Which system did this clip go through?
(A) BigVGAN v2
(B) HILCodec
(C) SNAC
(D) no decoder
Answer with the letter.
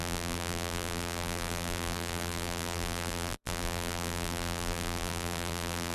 A